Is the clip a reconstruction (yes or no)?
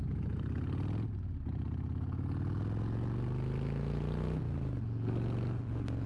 no